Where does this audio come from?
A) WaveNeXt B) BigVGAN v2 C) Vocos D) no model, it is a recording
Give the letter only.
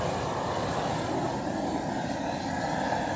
D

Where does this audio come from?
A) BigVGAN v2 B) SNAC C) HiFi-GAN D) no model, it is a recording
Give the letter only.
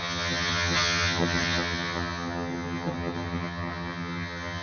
C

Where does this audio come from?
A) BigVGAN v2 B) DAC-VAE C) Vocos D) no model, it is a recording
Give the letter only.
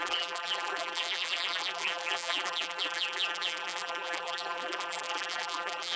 A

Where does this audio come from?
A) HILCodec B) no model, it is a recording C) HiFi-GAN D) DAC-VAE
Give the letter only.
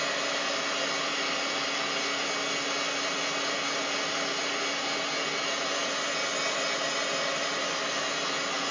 B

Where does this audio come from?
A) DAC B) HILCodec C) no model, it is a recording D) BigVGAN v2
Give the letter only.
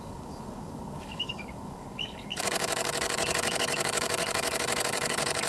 A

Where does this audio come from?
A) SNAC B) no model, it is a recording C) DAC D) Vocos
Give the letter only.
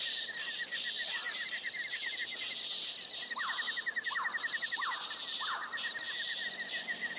B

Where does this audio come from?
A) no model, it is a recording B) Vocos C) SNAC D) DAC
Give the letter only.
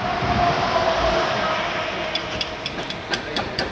A